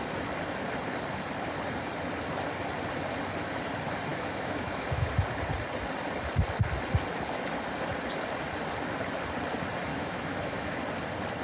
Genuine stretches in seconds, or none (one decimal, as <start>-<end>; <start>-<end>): 0.0-4.1; 5.1-9.9; 10.8-11.4